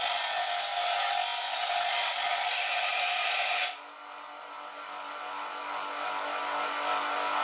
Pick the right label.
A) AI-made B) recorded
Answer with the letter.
B